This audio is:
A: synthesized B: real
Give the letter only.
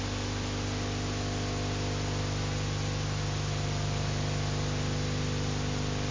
B